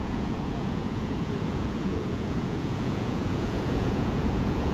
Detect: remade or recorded remade